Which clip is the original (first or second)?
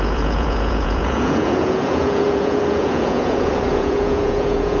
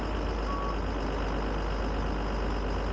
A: second